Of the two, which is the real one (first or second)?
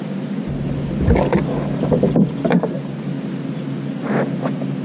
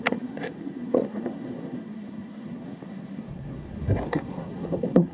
first